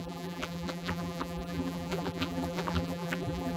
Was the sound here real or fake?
fake